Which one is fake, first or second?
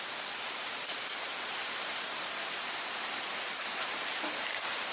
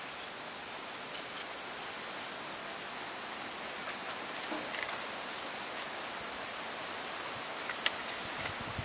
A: first